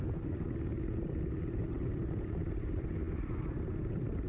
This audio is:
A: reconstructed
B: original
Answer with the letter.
B